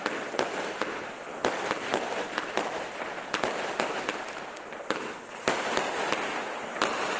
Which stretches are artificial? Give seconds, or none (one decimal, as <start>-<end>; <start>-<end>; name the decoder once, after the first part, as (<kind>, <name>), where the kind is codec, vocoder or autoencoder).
none